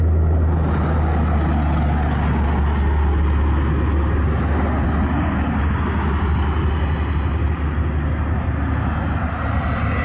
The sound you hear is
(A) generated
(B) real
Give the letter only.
B